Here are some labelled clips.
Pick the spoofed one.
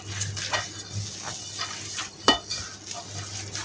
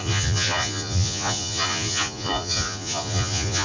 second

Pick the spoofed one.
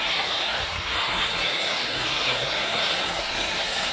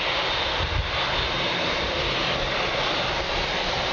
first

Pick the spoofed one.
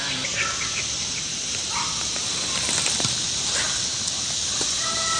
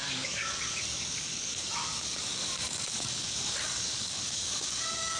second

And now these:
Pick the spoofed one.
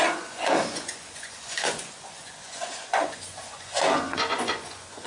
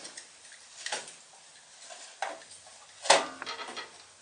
first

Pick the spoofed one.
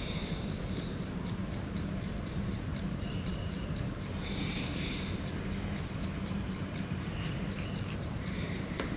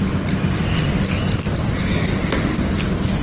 first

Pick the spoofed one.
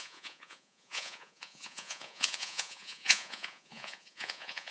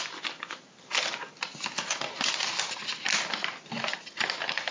first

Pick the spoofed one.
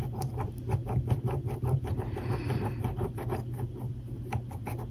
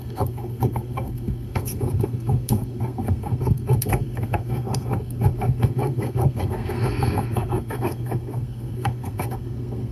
second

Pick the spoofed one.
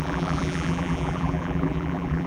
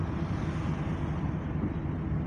first